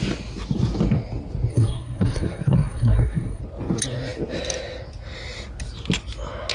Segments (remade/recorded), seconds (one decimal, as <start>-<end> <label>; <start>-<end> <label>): 0.0-1.5 recorded; 1.5-3.4 remade; 3.4-6.5 recorded

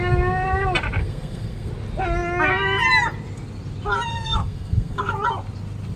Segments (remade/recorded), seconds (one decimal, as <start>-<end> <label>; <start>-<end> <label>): 0.0-1.0 recorded; 1.0-1.7 remade; 1.7-4.1 recorded; 4.1-5.1 remade; 5.1-6.0 recorded

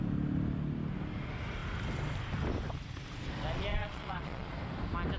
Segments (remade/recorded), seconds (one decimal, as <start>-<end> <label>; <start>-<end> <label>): 0.0-3.7 recorded; 3.7-4.5 remade; 4.5-5.2 recorded

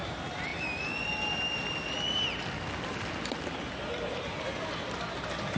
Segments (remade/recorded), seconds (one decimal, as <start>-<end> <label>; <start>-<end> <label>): 0.0-5.6 recorded

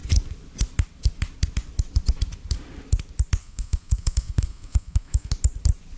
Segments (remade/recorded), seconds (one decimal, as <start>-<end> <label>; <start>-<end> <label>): 0.0-3.4 recorded; 3.4-5.3 remade; 5.3-6.0 recorded